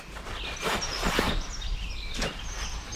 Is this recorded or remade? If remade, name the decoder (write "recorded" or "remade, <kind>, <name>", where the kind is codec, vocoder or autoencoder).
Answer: recorded